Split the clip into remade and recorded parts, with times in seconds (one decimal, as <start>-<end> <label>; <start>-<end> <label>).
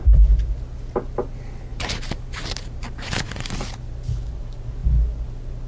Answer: 0.0-1.7 recorded; 1.7-3.8 remade; 3.8-5.7 recorded